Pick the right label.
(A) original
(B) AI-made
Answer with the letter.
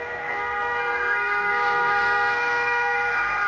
B